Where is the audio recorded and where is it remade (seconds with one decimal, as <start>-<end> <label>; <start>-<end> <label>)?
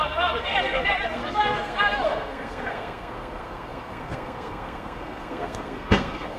0.0-6.4 remade